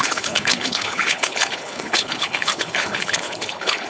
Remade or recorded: remade